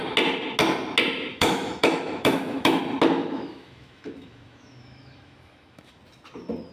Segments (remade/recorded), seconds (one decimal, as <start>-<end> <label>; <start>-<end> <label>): 0.0-1.3 recorded; 1.3-2.8 remade; 2.8-3.2 recorded; 3.2-6.0 remade; 6.0-6.7 recorded